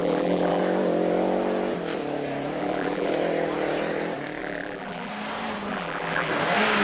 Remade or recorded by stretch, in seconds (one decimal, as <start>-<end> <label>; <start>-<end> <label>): 0.0-0.6 remade; 0.6-2.6 recorded; 2.6-3.1 remade; 3.1-4.4 recorded; 4.4-5.1 remade; 5.1-5.7 recorded; 5.7-6.3 remade; 6.3-6.8 recorded